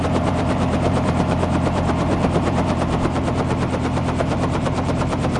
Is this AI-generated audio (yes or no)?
yes